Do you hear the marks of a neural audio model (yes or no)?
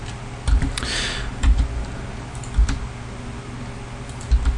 no